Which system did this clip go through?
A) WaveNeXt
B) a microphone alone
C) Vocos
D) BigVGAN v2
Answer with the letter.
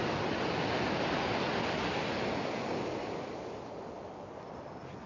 B